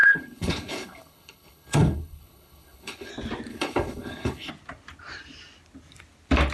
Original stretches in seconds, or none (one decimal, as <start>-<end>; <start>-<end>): 3.1-3.5; 4.5-6.5